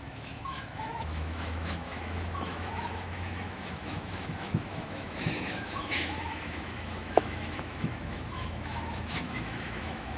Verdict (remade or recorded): remade